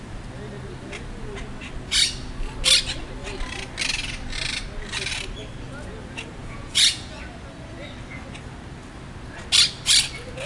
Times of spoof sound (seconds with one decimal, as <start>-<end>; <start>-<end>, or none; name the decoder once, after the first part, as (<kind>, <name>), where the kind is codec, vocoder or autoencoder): 6.4-7.1 (vocoder, Vocos)